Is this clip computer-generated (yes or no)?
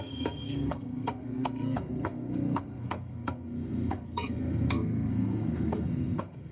yes